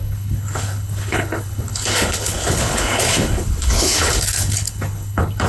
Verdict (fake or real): fake